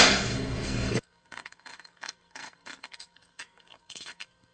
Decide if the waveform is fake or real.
fake